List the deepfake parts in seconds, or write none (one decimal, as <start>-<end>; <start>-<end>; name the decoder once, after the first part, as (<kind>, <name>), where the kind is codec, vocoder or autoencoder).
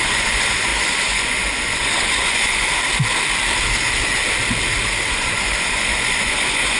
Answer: 0.0-2.7 (vocoder, Vocos); 5.1-6.8